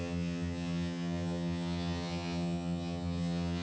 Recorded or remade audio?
remade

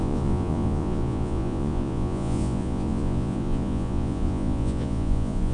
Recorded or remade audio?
remade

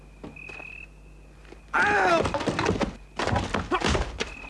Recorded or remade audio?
recorded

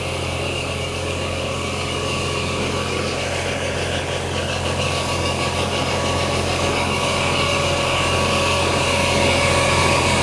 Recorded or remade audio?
remade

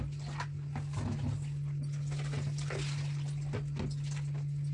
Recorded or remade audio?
recorded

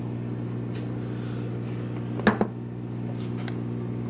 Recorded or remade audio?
recorded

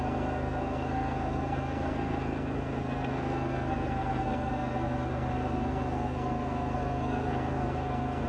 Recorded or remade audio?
remade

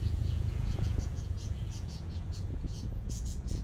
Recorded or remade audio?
remade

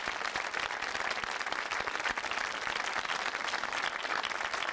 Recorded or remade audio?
recorded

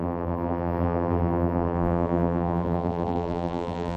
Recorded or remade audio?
remade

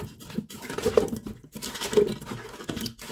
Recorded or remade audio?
recorded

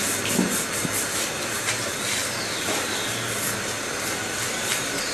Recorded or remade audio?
recorded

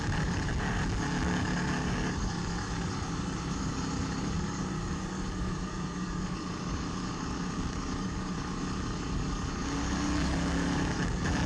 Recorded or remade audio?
remade